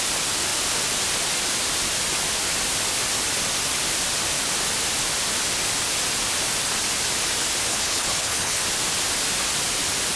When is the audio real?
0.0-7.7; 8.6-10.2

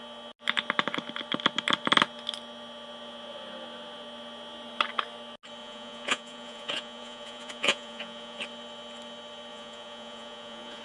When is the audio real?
0.0-5.6; 8.4-9.5

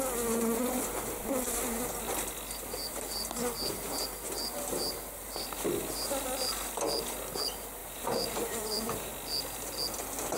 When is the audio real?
0.0-7.8; 9.1-10.4

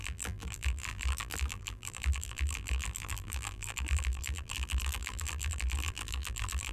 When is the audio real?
none

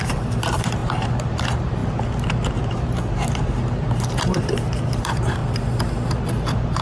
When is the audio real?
1.8-2.5; 5.4-6.3